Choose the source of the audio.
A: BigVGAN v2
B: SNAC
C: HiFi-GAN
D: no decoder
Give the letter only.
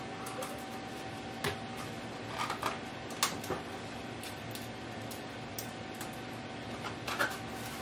D